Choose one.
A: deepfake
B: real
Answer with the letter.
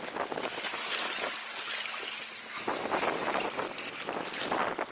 B